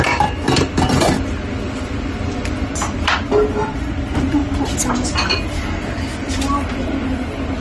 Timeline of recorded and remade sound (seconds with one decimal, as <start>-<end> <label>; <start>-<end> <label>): 0.0-4.4 remade; 4.4-7.6 recorded